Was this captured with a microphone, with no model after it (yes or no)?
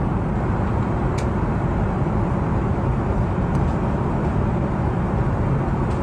yes